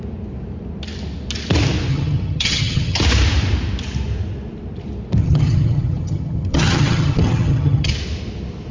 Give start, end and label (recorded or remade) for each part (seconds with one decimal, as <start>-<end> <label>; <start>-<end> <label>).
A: 0.0-1.9 recorded; 1.9-3.0 remade; 3.0-5.2 recorded; 5.2-7.9 remade; 7.9-8.7 recorded